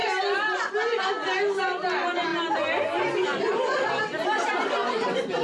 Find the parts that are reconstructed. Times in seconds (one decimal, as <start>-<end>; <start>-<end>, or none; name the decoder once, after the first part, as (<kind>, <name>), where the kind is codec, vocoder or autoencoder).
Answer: none